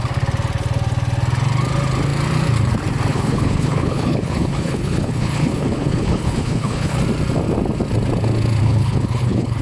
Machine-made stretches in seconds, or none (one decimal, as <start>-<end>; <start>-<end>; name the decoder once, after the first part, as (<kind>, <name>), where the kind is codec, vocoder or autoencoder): 3.1-7.0 (codec, HILCodec); 8.6-9.6